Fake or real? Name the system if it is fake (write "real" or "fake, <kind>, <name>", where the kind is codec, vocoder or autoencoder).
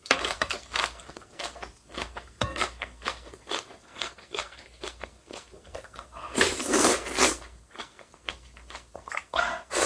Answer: fake, codec, SNAC